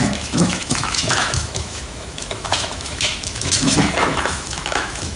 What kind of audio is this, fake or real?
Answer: fake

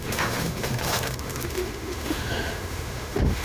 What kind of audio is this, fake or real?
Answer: fake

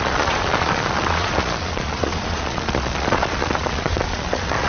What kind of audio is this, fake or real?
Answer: fake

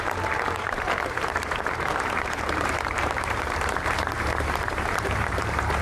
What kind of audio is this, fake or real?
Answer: fake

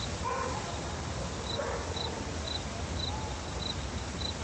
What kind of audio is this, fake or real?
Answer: real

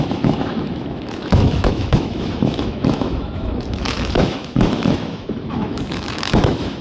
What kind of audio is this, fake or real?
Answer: fake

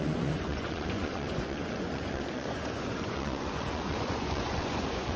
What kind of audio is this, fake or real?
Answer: fake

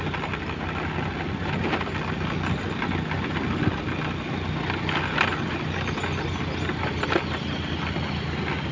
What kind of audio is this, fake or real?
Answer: real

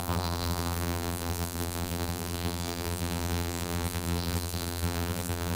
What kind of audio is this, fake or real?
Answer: fake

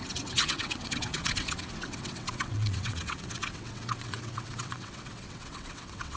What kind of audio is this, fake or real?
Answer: fake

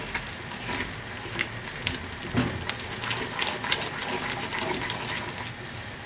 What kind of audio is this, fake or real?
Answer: real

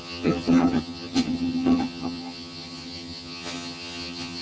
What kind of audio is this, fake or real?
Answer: fake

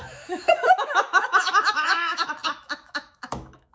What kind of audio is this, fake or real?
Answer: fake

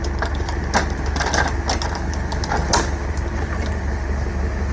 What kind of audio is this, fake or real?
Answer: real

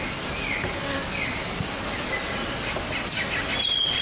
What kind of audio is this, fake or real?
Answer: real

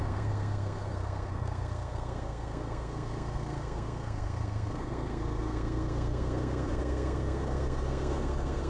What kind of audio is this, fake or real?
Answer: fake